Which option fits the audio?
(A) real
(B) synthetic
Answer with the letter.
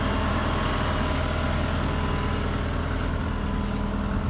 A